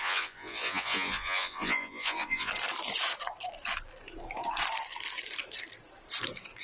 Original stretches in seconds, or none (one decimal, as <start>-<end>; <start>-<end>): 2.5-6.6